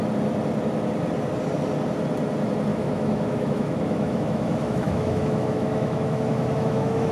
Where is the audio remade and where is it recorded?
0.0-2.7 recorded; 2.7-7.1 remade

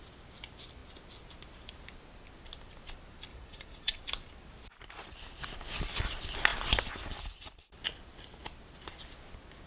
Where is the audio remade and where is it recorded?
0.0-3.3 recorded; 3.3-4.0 remade; 4.0-9.7 recorded

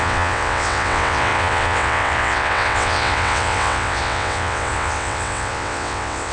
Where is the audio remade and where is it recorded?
0.0-6.3 remade

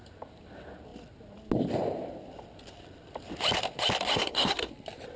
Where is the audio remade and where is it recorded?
0.0-4.1 recorded; 4.1-4.7 remade; 4.7-5.2 recorded

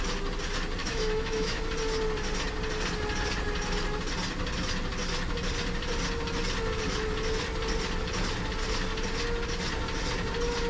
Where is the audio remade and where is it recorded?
0.0-0.8 recorded; 0.8-1.6 remade; 1.6-10.7 recorded

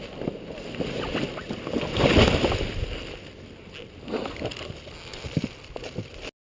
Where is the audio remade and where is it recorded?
0.0-6.5 recorded